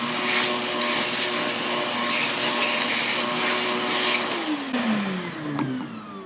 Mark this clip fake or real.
real